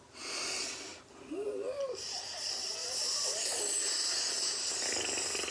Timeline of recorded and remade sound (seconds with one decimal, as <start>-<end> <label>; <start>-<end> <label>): 0.0-5.5 recorded